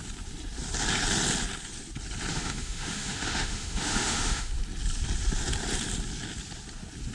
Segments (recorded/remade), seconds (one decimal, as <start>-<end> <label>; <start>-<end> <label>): 0.0-2.3 recorded; 2.3-4.5 remade; 4.5-7.1 recorded